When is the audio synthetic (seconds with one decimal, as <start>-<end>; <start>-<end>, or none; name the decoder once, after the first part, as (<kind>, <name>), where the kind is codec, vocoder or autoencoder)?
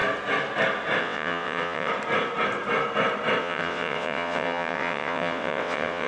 1.0-1.9 (vocoder, WaveNeXt); 3.4-6.1